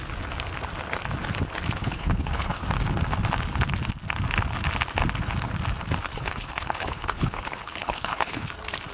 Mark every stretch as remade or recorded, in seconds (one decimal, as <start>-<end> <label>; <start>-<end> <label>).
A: 0.0-1.8 recorded; 1.8-2.7 remade; 2.7-6.1 recorded; 6.1-8.5 remade; 8.5-8.9 recorded